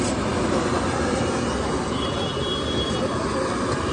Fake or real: real